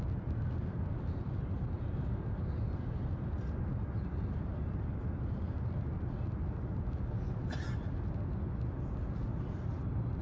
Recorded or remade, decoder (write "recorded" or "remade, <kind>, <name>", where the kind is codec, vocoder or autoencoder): recorded